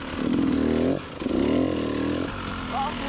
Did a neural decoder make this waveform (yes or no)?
no